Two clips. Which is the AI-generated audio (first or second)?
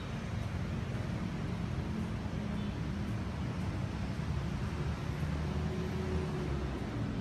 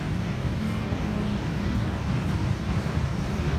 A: second